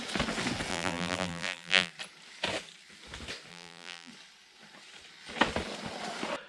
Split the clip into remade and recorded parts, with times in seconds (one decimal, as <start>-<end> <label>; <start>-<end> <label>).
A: 0.0-0.7 recorded; 0.7-1.9 remade; 1.9-3.5 recorded; 3.5-4.1 remade; 4.1-6.5 recorded